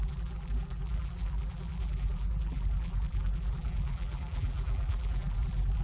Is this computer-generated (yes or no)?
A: yes